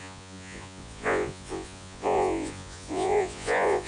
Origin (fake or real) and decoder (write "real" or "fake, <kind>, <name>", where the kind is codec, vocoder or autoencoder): fake, vocoder, Vocos